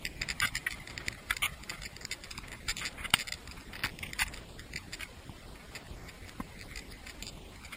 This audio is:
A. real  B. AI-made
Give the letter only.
A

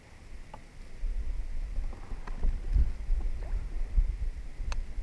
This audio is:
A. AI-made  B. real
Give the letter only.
B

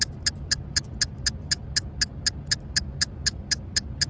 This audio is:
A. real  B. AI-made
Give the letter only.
A